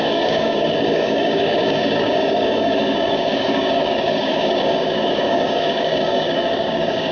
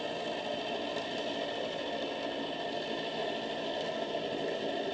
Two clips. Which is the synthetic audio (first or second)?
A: first